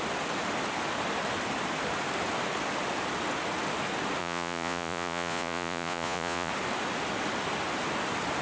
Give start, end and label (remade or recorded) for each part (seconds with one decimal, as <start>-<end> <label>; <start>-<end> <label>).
0.0-4.2 recorded; 4.2-6.5 remade; 6.5-8.4 recorded